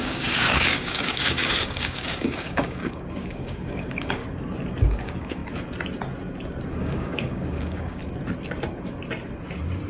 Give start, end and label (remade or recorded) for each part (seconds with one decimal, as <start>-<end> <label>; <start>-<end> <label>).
0.0-4.2 remade; 4.2-4.8 recorded; 4.8-5.4 remade; 5.4-6.7 recorded; 6.7-8.0 remade; 8.0-9.9 recorded